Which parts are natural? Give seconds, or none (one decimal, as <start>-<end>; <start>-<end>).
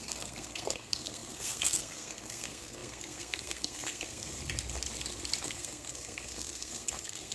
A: 4.4-5.4